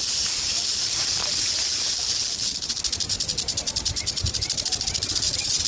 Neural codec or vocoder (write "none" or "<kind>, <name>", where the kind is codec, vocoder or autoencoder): vocoder, BigVGAN v2